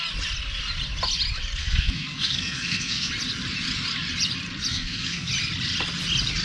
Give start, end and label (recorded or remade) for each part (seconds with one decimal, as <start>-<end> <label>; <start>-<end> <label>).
0.0-1.6 recorded; 1.6-3.1 remade; 3.1-4.7 recorded; 4.7-5.3 remade; 5.3-6.4 recorded